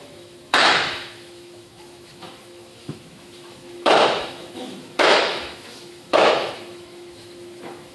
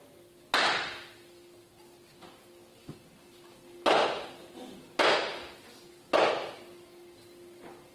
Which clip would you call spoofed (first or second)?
first